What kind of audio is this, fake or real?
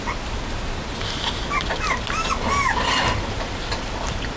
real